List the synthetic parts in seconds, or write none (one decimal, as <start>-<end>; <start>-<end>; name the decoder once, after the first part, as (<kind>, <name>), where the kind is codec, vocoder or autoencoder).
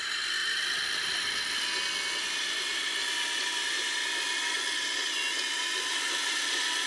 none